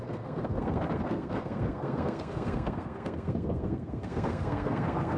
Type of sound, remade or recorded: remade